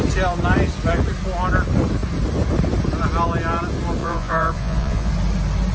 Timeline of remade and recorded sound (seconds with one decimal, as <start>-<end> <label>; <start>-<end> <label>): 0.0-4.0 recorded; 4.0-5.1 remade; 5.1-5.7 recorded